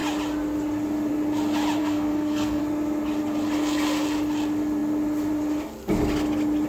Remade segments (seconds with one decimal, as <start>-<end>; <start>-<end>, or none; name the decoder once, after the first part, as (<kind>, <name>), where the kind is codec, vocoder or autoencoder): 1.8-2.6 (codec, SNAC)